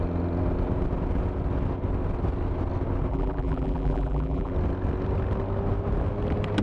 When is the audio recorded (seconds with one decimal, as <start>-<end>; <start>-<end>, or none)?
0.0-3.1; 4.5-6.6